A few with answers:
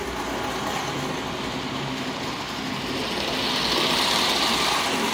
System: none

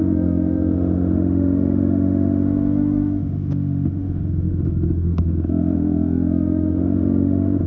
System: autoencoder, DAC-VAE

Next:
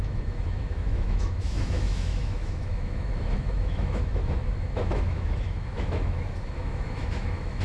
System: autoencoder, DAC-VAE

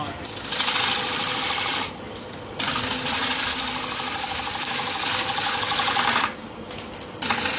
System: none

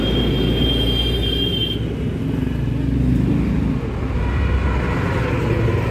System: none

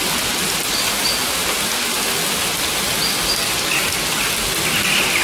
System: none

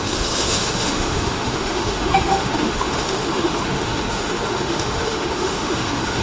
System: autoencoder, DAC-VAE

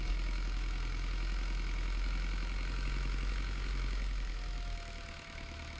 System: autoencoder, DAC-VAE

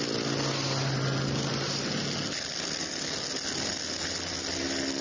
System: none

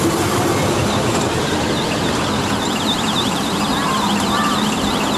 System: none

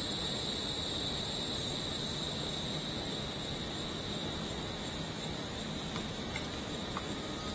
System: none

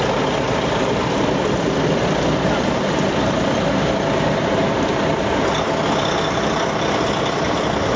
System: none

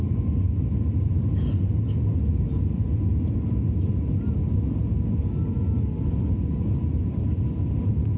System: none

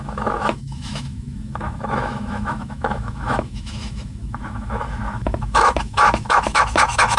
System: autoencoder, DAC-VAE